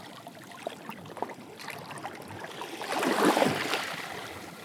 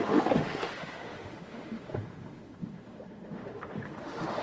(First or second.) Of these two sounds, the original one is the first